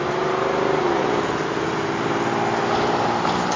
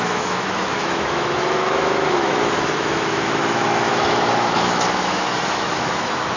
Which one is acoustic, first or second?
first